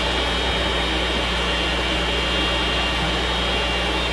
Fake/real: real